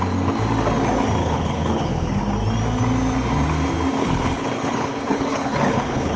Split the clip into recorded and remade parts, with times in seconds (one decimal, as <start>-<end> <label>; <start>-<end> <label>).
0.0-1.2 recorded; 1.2-2.2 remade; 2.2-4.0 recorded; 4.0-6.2 remade